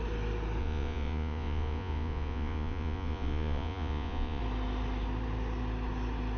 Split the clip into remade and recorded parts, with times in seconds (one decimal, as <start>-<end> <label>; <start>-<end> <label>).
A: 0.0-0.6 recorded; 0.6-4.4 remade; 4.4-6.4 recorded